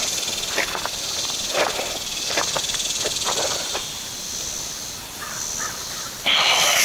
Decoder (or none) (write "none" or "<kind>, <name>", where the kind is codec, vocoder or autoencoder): none